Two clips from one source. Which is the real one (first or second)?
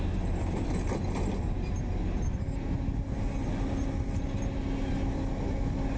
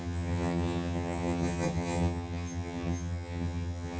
first